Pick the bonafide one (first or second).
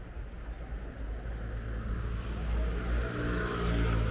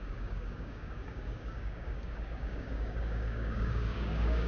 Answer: first